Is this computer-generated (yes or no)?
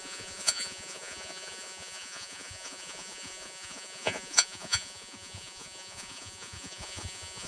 yes